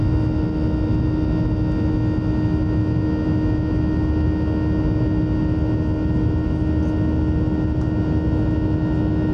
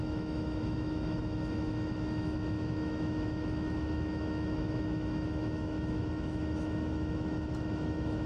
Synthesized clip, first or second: second